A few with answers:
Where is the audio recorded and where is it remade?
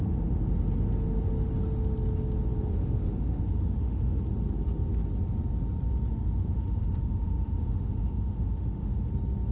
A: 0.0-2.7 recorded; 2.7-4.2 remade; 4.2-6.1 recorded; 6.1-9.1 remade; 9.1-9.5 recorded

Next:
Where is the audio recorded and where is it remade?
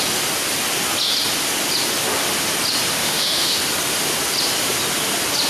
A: 0.0-3.0 recorded; 3.0-3.6 remade; 3.6-5.5 recorded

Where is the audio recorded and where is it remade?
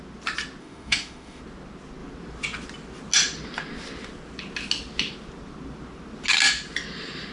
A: 0.0-0.6 recorded; 0.6-1.4 remade; 1.4-7.3 recorded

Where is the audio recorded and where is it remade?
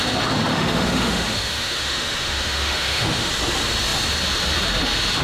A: 0.0-0.5 recorded; 0.5-3.3 remade; 3.3-5.2 recorded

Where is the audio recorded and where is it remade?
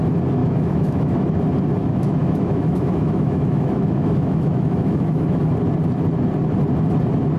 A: 0.0-0.4 recorded; 0.4-1.4 remade; 1.4-1.8 recorded; 1.8-5.4 remade; 5.4-7.4 recorded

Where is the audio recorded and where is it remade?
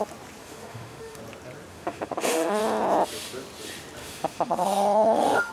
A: 0.0-0.4 recorded; 0.4-1.2 remade; 1.2-1.7 recorded; 1.7-2.6 remade; 2.6-4.0 recorded; 4.0-5.5 remade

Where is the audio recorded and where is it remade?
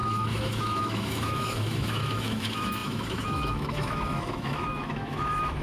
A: 0.0-5.6 remade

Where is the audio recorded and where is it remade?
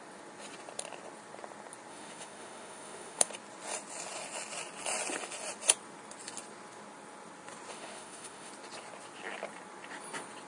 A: 0.0-1.9 recorded; 1.9-3.3 remade; 3.3-7.7 recorded; 7.7-8.5 remade; 8.5-10.5 recorded